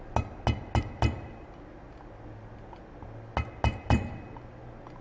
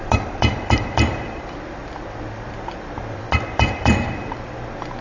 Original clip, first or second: first